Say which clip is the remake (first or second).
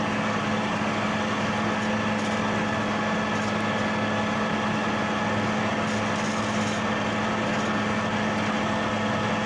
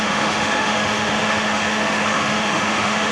second